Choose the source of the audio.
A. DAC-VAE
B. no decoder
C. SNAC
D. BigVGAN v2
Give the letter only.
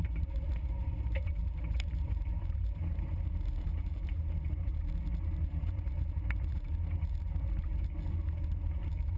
D